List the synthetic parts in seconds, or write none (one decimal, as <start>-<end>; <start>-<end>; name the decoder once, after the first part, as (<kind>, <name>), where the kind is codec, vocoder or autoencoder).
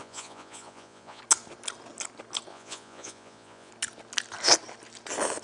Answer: 0.0-1.2 (vocoder, Vocos); 2.5-3.7